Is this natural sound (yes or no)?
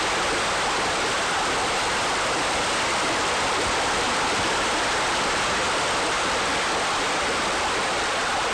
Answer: yes